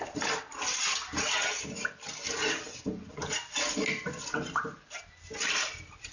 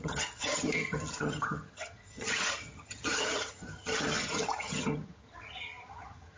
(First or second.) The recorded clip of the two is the first